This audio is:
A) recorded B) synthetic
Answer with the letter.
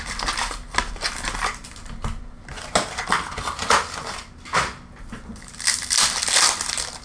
A